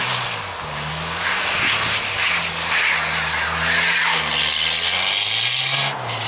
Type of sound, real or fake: real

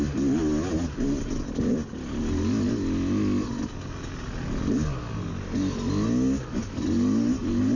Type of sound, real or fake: real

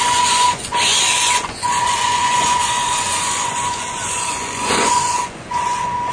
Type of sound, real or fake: fake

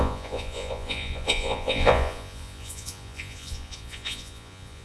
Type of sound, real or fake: fake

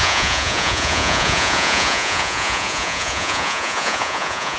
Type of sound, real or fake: fake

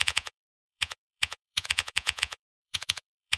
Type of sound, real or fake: fake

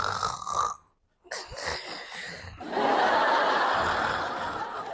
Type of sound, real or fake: real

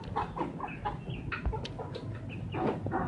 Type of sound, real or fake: real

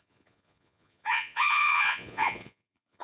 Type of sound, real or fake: fake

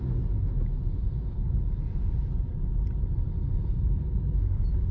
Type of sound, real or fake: real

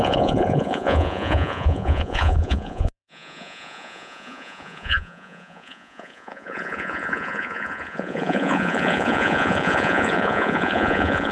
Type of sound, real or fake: fake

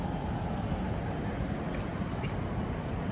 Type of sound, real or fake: real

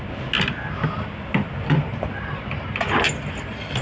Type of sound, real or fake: real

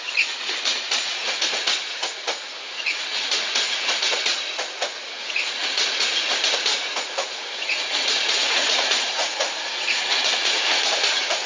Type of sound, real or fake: fake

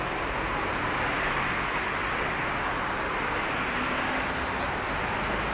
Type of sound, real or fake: real